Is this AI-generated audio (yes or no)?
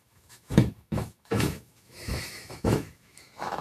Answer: yes